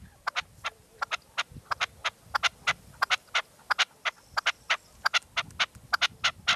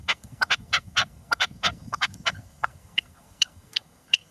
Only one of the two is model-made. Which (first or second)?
second